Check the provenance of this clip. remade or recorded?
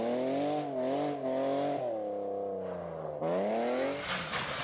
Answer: recorded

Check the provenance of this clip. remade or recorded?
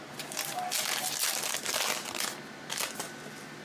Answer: recorded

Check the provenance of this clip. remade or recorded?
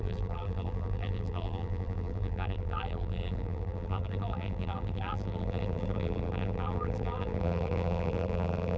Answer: remade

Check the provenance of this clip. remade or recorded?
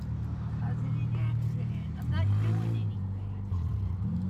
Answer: recorded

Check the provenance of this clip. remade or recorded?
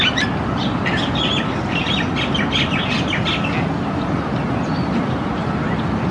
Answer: recorded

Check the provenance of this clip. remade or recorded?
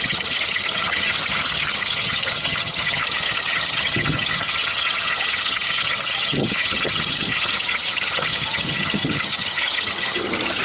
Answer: remade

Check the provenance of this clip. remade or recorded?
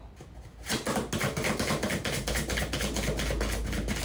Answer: recorded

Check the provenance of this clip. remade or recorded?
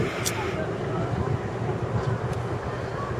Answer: recorded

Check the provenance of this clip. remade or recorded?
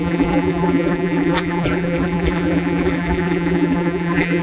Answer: remade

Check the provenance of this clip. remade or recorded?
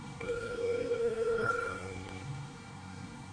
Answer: remade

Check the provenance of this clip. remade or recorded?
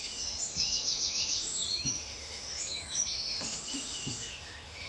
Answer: remade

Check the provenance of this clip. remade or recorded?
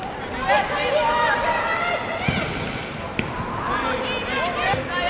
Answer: recorded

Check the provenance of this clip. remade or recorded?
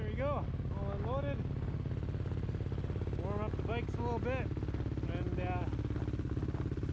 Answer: recorded